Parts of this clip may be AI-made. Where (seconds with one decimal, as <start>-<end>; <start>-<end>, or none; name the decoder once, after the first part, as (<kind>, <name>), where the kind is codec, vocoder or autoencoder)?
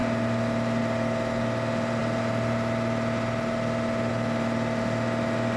none